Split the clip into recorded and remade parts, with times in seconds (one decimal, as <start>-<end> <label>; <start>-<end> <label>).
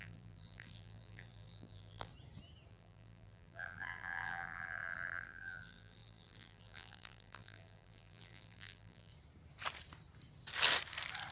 0.0-2.1 remade; 2.1-2.7 recorded; 2.7-9.1 remade; 9.1-11.3 recorded